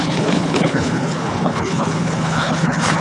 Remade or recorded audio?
remade